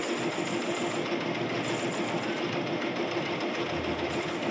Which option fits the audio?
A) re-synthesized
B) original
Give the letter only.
B